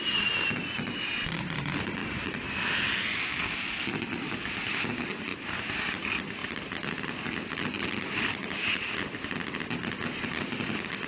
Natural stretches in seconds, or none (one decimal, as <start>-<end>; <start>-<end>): 0.0-5.3; 5.9-6.4; 7.2-11.1